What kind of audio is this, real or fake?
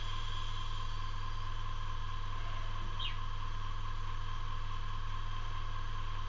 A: real